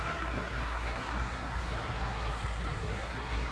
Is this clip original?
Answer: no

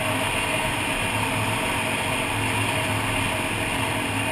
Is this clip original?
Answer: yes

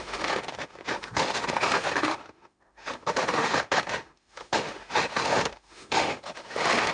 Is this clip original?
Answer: no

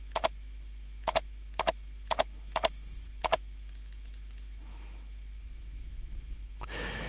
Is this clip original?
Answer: no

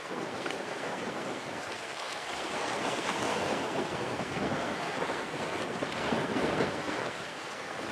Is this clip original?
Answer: no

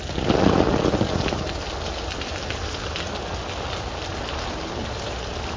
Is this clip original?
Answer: yes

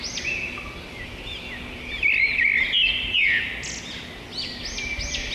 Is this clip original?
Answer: yes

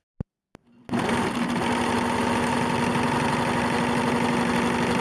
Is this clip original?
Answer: yes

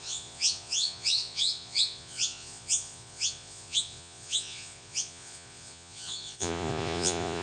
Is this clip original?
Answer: no